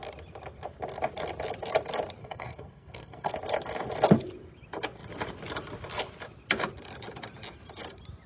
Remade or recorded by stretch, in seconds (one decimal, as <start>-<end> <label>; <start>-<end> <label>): 0.0-2.2 recorded; 2.2-3.3 remade; 3.3-8.3 recorded